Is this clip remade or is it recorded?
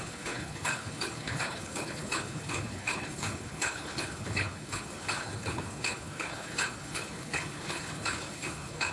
remade